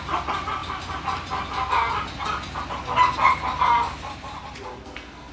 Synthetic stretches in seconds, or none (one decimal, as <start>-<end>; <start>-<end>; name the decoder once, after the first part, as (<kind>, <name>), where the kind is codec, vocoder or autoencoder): 4.7-5.3 (codec, SNAC)